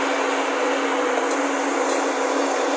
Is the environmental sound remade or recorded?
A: recorded